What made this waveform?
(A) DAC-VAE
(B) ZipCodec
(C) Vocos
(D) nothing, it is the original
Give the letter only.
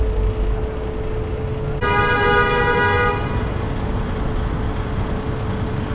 D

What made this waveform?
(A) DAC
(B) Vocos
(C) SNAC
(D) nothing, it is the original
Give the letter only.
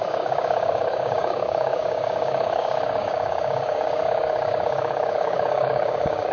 A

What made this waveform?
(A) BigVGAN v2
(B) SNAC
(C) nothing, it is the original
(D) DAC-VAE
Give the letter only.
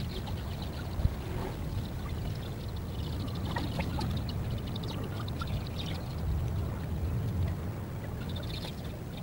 C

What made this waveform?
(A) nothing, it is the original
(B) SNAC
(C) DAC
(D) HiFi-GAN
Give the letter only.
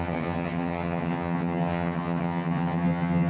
D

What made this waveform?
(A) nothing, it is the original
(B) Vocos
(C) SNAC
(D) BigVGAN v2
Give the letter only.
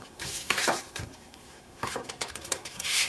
C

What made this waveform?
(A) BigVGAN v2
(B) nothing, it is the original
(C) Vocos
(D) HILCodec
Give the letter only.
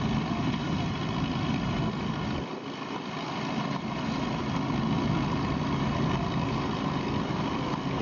B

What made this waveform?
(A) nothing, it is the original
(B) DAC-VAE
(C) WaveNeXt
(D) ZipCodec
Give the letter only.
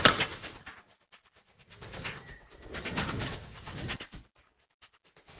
A